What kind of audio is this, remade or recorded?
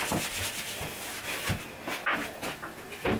recorded